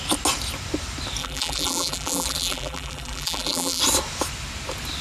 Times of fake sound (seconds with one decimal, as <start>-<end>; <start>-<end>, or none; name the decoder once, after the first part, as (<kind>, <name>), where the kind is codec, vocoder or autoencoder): 1.2-3.8 (vocoder, BigVGAN v2)

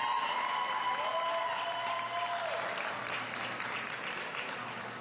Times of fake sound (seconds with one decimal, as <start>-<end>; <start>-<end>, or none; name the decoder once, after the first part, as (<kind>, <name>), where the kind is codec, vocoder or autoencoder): 1.1-4.1 (vocoder, BigVGAN v2)

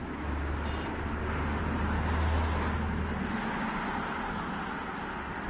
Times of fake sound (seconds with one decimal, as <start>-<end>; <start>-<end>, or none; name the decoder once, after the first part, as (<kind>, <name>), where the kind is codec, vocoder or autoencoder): 1.1-1.6 (autoencoder, DAC-VAE)

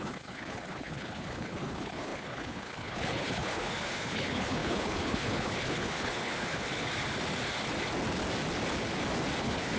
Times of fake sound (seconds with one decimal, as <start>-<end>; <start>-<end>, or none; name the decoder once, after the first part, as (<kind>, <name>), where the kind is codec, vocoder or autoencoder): 0.0-6.7 (codec, HILCodec); 9.4-9.8

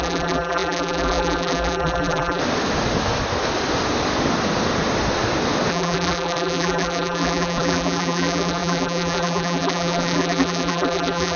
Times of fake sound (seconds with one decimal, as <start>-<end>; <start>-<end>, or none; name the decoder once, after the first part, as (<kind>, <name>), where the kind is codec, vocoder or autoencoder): 0.0-2.4 (vocoder, BigVGAN v2); 5.7-11.4